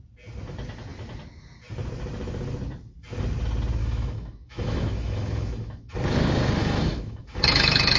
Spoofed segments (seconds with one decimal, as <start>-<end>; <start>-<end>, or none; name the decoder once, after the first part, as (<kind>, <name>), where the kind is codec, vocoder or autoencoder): 3.8-5.9 (autoencoder, DAC-VAE); 6.6-8.0